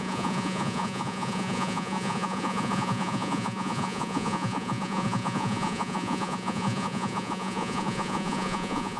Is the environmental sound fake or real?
fake